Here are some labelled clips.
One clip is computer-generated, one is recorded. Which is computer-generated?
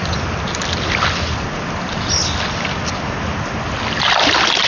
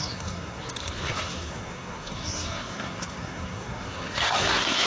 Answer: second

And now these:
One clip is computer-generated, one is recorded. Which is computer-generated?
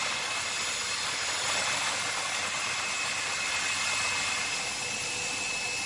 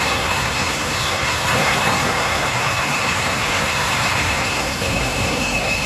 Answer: second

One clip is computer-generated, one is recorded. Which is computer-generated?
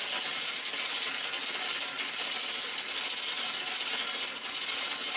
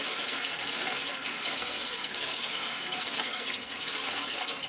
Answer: second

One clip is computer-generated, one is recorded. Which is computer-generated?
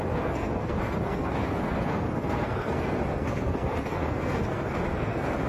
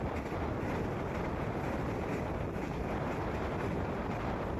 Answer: first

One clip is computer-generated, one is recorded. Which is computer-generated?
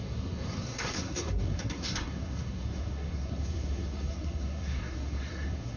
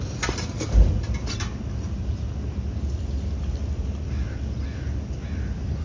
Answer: first